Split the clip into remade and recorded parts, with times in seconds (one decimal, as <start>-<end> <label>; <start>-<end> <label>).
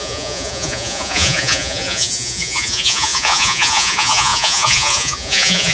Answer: 0.0-5.7 remade